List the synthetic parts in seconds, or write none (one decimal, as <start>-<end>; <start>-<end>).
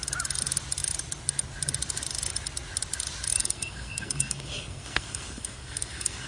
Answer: 3.4-6.3